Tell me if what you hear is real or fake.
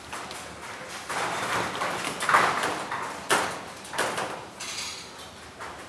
real